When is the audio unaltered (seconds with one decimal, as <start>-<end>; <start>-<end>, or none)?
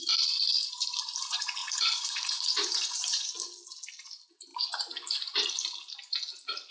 0.0-1.6; 3.3-6.7